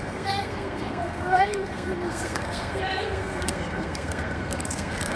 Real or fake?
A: fake